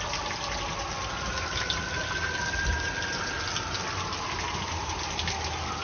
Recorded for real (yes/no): yes